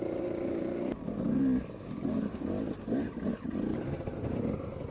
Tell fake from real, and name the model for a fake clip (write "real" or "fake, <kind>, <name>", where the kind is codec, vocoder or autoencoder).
real